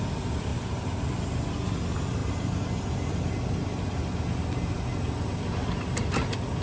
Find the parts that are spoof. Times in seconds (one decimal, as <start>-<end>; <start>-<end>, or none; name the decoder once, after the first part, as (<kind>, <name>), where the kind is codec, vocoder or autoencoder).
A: 0.5-1.0 (vocoder, BigVGAN v2)